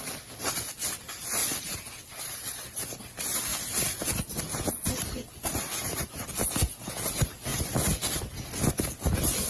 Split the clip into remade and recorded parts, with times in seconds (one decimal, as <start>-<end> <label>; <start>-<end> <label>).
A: 0.0-9.5 recorded